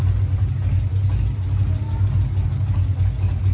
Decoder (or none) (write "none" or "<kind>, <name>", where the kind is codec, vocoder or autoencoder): none